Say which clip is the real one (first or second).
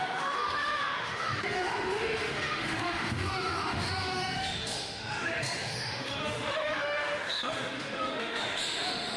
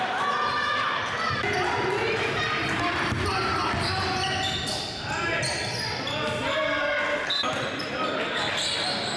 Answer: second